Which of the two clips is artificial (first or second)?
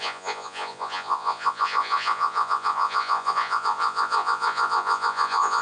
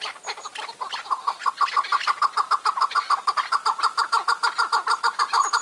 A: first